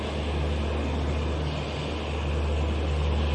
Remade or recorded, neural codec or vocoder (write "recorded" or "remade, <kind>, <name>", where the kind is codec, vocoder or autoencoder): recorded